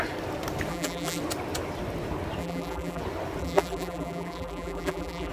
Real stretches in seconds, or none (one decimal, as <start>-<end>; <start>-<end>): 0.0-0.7; 1.2-2.4; 3.0-3.4